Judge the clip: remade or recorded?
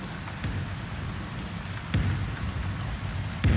recorded